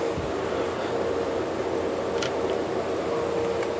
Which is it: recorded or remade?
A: recorded